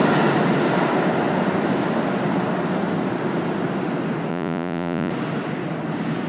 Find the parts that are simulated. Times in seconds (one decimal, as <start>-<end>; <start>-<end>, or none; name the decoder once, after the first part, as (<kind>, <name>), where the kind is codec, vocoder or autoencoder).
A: 4.3-5.1 (vocoder, Vocos)